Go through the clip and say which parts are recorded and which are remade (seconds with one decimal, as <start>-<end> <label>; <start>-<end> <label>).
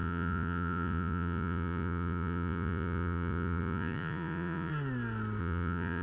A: 0.0-4.7 remade; 4.7-5.4 recorded; 5.4-6.0 remade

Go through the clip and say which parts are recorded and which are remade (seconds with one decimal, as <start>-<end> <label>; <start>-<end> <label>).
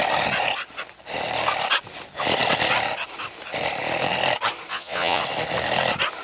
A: 0.0-4.7 recorded; 4.7-5.2 remade; 5.2-6.2 recorded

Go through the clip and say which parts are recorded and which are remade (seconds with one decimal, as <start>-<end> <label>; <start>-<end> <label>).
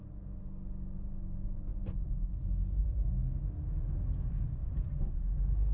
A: 0.0-5.7 recorded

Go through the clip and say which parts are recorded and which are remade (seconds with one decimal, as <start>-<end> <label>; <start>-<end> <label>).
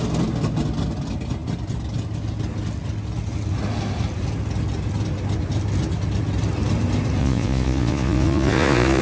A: 0.0-7.2 recorded; 7.2-9.0 remade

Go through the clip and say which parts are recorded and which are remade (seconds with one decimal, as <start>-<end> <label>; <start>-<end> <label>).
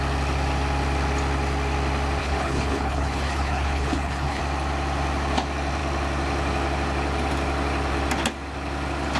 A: 0.0-2.2 recorded; 2.2-4.4 remade; 4.4-9.2 recorded